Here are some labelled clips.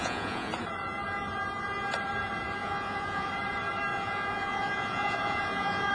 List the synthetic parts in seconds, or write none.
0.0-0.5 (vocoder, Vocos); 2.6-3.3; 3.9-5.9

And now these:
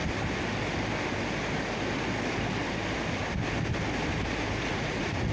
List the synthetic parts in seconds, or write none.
4.7-5.3 (vocoder, Vocos)

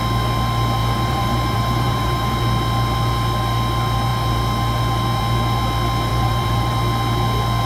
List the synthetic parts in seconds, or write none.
0.8-2.4 (vocoder, BigVGAN v2); 6.1-6.7

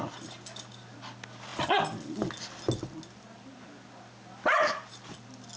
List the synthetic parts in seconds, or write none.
none

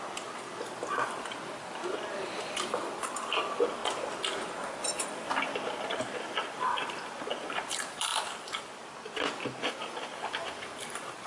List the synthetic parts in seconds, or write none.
0.0-3.8 (vocoder, BigVGAN v2); 4.7-8.1; 9.8-11.3